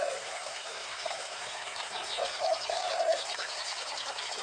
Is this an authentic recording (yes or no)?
no